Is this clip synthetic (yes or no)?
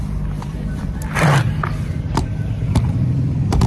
yes